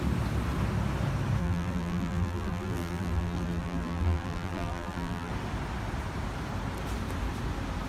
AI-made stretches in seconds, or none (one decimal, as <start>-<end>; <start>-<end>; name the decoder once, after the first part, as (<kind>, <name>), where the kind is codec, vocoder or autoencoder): 1.4-5.3 (vocoder, BigVGAN v2)